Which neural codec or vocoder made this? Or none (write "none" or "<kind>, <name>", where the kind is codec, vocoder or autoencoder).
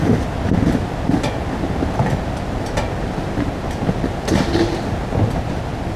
none